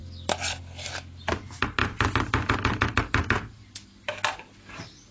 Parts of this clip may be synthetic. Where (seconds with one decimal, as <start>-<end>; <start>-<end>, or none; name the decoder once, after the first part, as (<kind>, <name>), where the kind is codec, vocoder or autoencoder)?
none